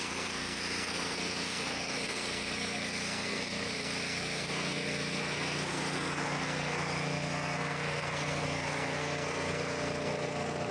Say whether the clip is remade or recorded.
remade